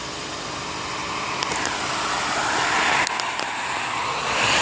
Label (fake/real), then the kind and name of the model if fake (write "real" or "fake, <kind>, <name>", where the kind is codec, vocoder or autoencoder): real